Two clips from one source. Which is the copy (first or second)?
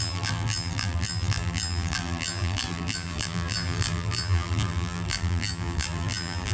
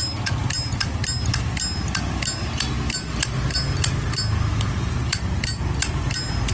first